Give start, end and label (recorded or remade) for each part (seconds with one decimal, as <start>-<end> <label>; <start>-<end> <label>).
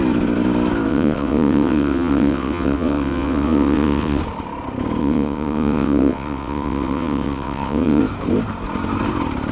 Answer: 0.0-0.9 recorded; 0.9-4.2 remade; 4.2-5.0 recorded; 5.0-8.0 remade; 8.0-9.5 recorded